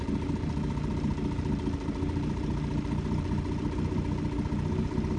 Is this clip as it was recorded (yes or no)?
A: yes